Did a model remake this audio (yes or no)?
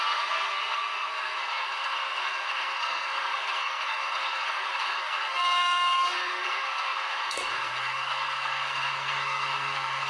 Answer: yes